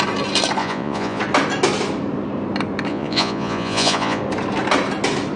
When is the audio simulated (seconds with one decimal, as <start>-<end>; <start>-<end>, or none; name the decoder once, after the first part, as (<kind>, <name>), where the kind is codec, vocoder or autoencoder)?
0.6-1.2 (vocoder, Vocos); 2.9-4.2